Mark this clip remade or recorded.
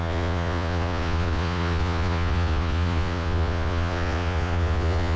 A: remade